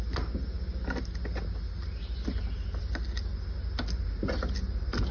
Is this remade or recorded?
recorded